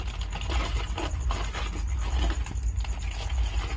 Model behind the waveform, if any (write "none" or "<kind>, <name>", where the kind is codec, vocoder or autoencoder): none